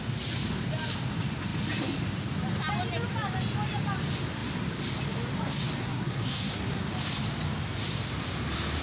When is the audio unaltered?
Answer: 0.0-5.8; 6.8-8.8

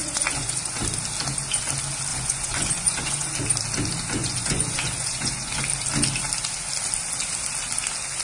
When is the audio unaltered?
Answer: 0.8-2.1; 3.3-4.2; 5.6-8.2

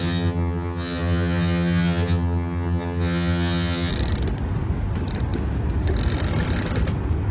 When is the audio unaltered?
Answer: 3.9-7.3